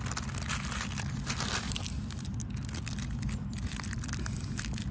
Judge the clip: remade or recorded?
recorded